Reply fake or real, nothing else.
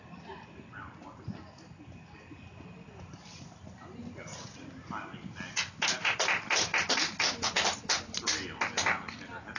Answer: real